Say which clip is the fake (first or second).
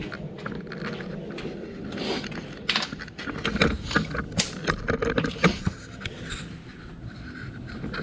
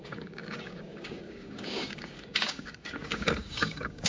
second